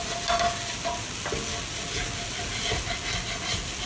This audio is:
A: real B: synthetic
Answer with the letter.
A